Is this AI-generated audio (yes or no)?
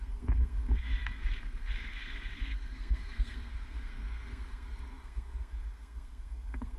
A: yes